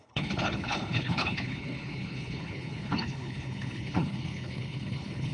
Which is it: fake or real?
fake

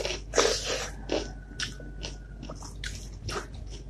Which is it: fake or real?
real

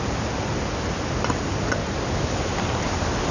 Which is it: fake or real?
real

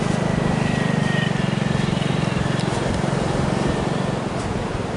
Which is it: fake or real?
real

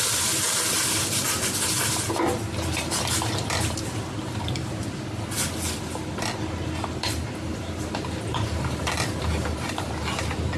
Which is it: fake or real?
real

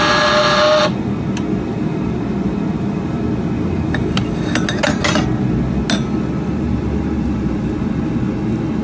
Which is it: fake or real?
real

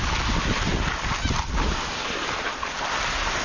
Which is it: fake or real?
real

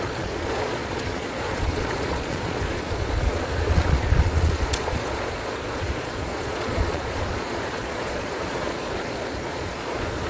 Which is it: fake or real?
fake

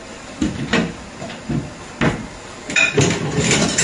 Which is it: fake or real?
real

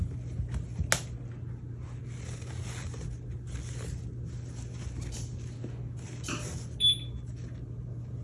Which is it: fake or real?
real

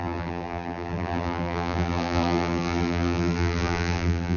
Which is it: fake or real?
fake